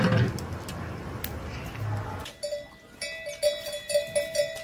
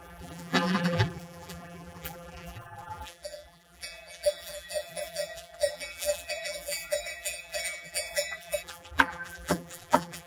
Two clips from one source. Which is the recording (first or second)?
first